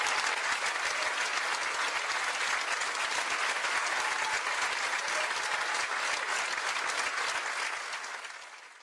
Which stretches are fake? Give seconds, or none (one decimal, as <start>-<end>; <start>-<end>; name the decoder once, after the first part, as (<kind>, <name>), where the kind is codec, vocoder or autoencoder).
none